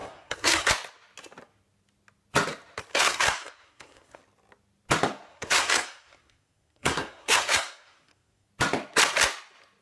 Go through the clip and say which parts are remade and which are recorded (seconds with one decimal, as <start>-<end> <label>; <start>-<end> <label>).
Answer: 0.0-0.7 remade; 0.7-2.9 recorded; 2.9-4.2 remade; 4.2-5.3 recorded; 5.3-8.5 remade; 8.5-9.8 recorded